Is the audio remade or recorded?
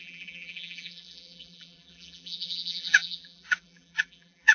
remade